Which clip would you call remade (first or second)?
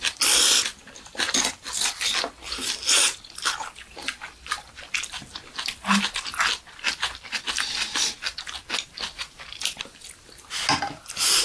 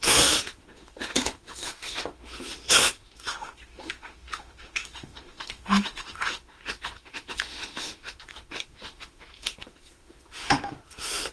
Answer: second